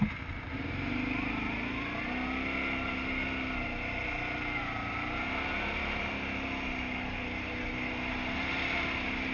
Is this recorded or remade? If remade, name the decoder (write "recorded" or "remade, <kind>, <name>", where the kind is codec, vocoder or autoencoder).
recorded